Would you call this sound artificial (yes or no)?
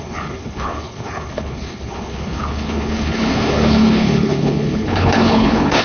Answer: yes